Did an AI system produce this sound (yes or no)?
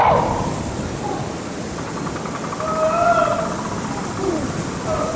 no